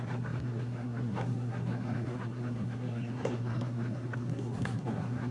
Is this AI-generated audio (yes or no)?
yes